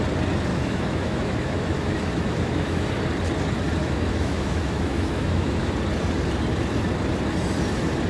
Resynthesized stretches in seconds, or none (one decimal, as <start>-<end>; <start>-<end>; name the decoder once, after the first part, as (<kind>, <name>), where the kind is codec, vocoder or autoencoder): 0.5-2.9 (autoencoder, DAC-VAE); 3.8-5.7